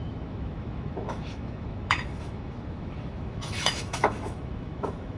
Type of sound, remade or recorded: remade